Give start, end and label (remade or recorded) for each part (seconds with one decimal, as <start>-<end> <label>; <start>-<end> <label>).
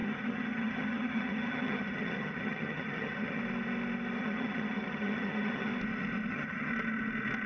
0.0-3.4 remade; 3.4-4.2 recorded; 4.2-5.7 remade; 5.7-6.3 recorded; 6.3-6.7 remade; 6.7-7.5 recorded